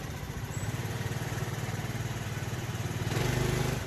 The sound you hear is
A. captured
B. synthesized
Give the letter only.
B